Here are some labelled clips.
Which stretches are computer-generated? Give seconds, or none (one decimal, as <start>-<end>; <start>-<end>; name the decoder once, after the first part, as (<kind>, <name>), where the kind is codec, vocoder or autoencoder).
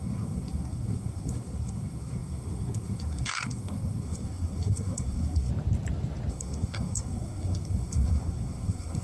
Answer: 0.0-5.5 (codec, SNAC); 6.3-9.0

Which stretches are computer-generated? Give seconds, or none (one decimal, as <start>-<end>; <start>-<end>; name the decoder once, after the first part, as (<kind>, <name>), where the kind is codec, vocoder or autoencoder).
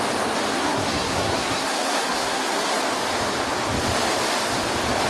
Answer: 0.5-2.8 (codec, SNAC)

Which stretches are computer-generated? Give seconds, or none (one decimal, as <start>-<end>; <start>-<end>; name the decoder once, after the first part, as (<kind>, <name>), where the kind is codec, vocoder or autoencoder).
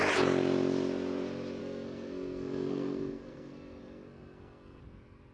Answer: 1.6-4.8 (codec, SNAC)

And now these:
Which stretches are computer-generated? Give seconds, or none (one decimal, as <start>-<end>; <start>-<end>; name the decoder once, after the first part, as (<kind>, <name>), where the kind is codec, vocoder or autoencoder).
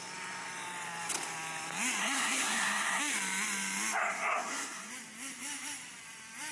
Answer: 2.0-3.0 (codec, SNAC); 4.0-4.9